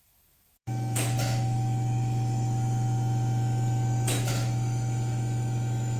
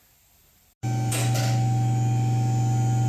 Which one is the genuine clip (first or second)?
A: second